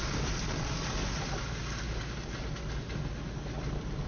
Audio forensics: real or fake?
real